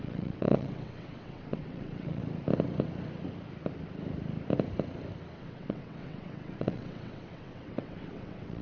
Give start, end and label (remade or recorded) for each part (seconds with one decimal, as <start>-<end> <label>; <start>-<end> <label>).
0.0-2.2 remade; 2.2-5.4 recorded; 5.4-8.6 remade